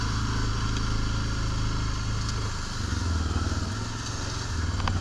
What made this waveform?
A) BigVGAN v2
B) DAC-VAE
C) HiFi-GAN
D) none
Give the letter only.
D